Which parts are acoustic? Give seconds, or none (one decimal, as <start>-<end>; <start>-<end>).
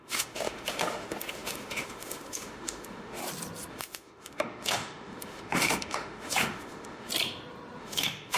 3.2-3.7; 7.1-7.8